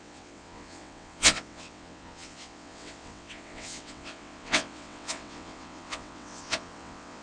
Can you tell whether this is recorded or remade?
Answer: remade